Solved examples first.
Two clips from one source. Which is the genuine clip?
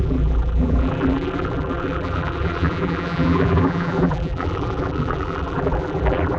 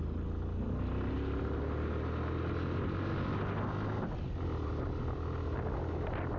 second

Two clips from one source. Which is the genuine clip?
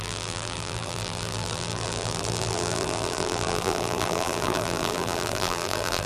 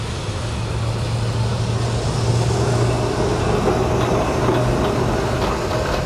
second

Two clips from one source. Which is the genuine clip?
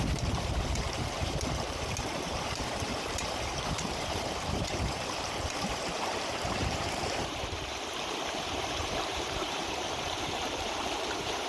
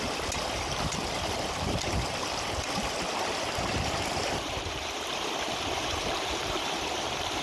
second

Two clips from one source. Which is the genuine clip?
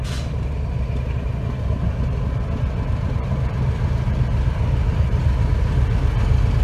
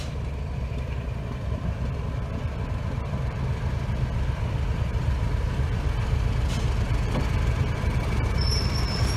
first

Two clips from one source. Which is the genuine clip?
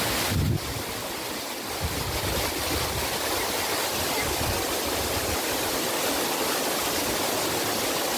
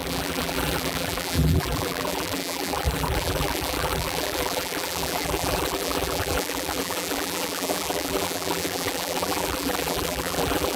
first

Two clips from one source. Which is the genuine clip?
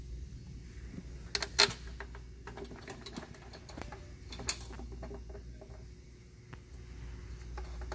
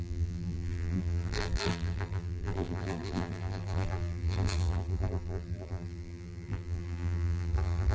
first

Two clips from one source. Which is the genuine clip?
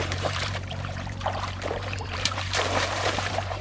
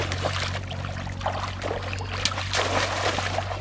second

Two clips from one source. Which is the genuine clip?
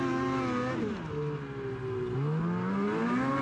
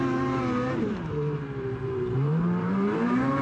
first